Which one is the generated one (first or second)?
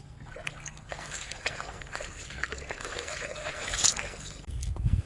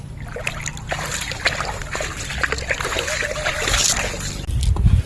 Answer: first